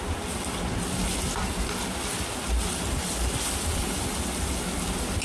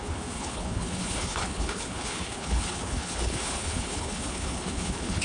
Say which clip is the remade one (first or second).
second